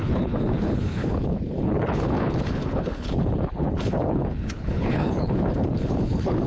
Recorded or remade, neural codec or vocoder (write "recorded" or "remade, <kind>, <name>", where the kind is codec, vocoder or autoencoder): remade, codec, HILCodec